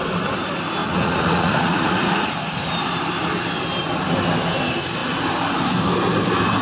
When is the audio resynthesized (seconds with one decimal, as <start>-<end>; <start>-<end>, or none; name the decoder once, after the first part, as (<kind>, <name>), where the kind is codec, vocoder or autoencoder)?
0.8-2.3 (vocoder, Vocos)